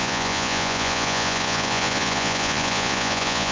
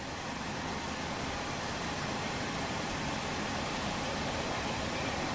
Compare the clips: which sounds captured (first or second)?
second